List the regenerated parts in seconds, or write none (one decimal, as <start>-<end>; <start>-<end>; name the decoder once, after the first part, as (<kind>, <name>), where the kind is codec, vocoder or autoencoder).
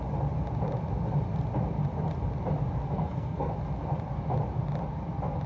2.8-3.5 (codec, SNAC)